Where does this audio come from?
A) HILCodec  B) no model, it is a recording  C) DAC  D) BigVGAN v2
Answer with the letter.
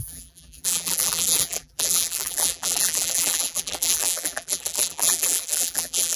D